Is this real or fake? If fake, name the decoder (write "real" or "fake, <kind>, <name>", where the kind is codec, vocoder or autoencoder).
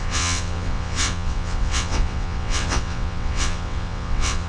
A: fake, vocoder, WaveNeXt